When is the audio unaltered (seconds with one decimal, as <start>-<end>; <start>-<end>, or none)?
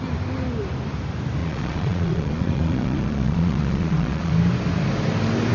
0.0-1.4; 4.3-5.5